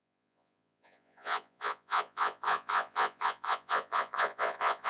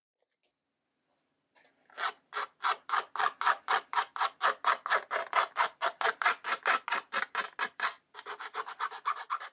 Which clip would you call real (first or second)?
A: second